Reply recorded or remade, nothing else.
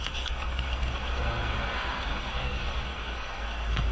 remade